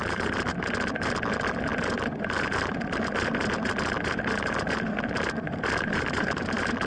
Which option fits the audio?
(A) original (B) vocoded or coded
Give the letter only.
A